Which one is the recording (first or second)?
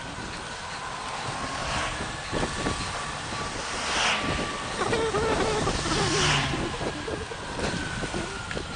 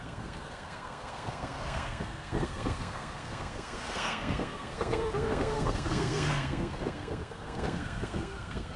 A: first